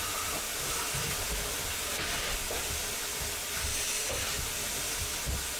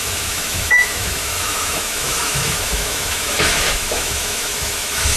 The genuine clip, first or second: first